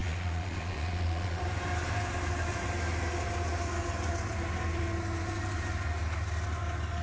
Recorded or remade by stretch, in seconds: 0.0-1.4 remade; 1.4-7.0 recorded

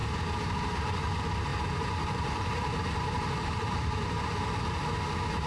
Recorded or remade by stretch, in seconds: 0.0-0.8 remade; 0.8-1.5 recorded; 1.5-4.8 remade; 4.8-5.5 recorded

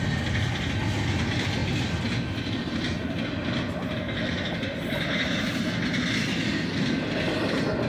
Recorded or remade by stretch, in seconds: 0.0-7.9 recorded

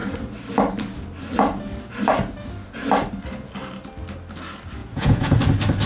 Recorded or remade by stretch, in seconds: 0.0-4.8 recorded; 4.8-5.4 remade; 5.4-5.9 recorded

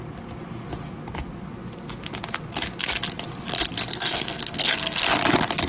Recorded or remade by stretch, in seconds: 0.0-3.9 recorded; 3.9-5.0 remade; 5.0-5.7 recorded

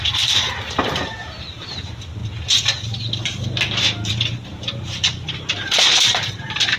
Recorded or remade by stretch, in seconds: 0.0-2.2 remade; 2.2-4.1 recorded; 4.1-6.8 remade

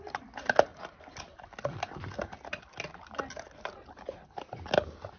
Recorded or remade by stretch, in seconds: 0.0-5.2 recorded

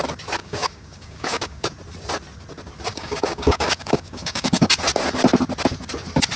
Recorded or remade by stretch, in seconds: 0.0-0.4 recorded; 0.4-1.7 remade; 1.7-2.9 recorded; 2.9-4.7 remade; 4.7-6.4 recorded